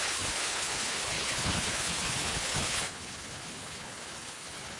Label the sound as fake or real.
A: fake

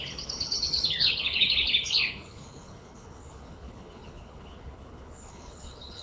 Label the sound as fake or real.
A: fake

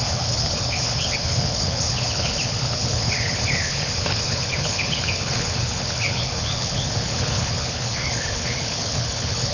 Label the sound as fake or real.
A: fake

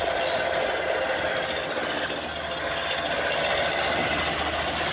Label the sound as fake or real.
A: real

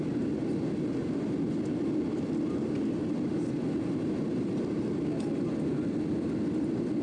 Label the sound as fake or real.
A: real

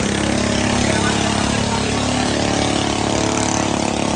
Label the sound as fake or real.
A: real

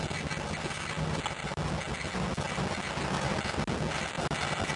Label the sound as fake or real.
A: real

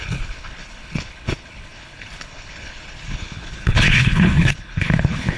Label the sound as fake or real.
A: fake